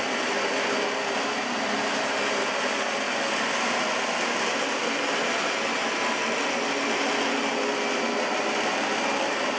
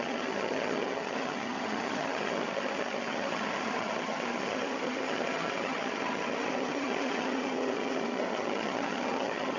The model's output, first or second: second